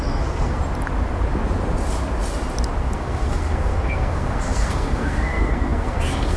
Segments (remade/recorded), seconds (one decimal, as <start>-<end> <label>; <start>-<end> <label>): 0.0-0.6 remade; 0.6-2.8 recorded; 2.8-6.4 remade